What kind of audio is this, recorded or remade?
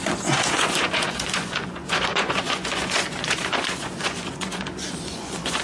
remade